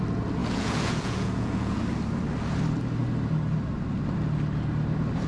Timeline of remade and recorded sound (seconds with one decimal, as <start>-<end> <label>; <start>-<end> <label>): 0.0-0.4 recorded; 0.4-1.8 remade; 1.8-5.3 recorded